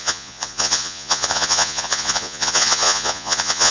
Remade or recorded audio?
remade